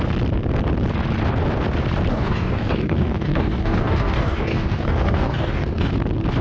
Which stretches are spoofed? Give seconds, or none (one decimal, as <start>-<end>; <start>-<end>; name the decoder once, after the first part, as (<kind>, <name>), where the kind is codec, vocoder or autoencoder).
2.1-5.9 (codec, DAC)